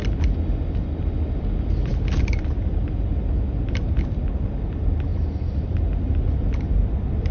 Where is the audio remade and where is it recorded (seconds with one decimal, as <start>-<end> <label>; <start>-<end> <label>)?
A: 0.0-5.1 recorded; 5.1-6.2 remade; 6.2-7.3 recorded